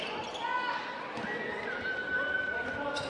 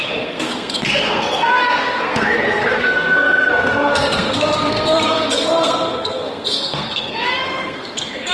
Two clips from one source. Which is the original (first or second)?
first